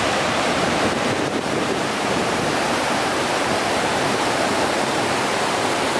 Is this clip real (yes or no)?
no